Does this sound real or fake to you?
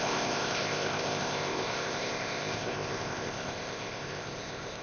fake